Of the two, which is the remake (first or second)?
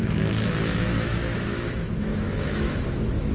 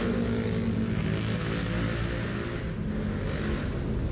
first